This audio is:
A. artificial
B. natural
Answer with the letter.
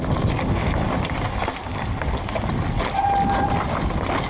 B